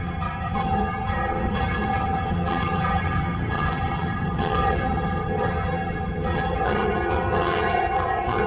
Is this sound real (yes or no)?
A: no